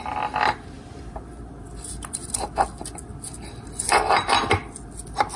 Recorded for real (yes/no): yes